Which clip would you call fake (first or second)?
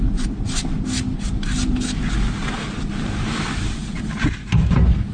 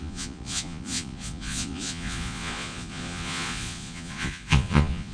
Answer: second